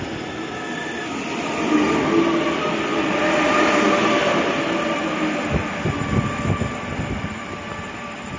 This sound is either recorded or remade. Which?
recorded